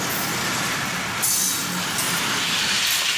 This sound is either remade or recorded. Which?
recorded